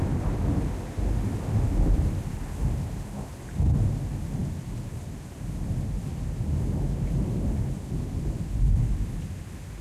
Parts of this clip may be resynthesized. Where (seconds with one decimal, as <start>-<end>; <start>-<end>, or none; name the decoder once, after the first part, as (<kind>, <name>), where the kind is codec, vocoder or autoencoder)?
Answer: none